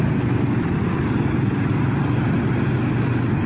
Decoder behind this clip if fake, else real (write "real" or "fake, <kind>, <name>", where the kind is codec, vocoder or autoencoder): real